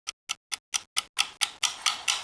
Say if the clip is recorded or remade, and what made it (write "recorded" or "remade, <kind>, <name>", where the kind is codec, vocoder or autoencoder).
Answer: recorded